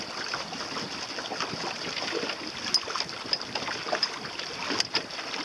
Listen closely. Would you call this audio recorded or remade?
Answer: recorded